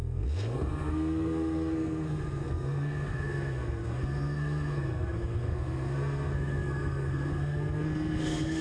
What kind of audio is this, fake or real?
fake